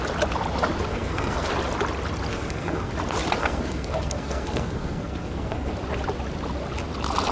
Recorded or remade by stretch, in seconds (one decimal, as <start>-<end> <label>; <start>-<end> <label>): 0.0-0.9 recorded; 0.9-1.5 remade; 1.5-2.3 recorded; 2.3-2.9 remade; 2.9-3.4 recorded; 3.4-5.7 remade; 5.7-7.3 recorded